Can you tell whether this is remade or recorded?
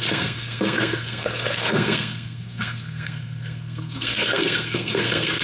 remade